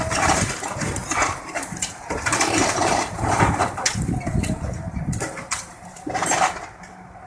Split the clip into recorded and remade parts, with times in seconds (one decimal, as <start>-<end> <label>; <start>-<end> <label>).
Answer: 0.0-7.3 remade